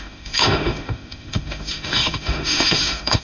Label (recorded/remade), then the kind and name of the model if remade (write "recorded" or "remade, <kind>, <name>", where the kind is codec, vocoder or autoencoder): remade, autoencoder, DAC-VAE